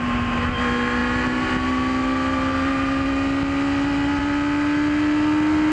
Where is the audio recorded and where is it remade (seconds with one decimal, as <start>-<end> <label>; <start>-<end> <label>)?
0.0-5.7 recorded